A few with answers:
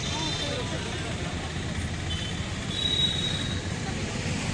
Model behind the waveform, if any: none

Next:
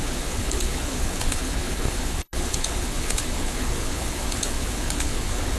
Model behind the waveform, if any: codec, HILCodec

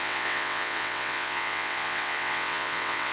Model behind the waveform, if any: vocoder, WaveNeXt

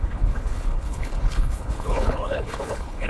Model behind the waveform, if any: codec, HILCodec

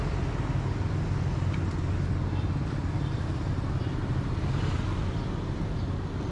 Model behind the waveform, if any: none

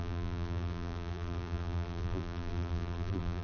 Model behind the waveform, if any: vocoder, BigVGAN v2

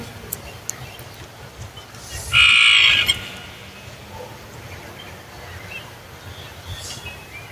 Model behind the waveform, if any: none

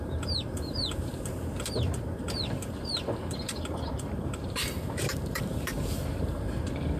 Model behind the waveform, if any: vocoder, BigVGAN v2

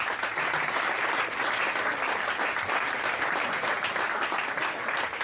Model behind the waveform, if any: none